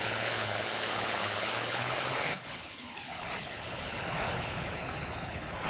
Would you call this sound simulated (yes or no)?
yes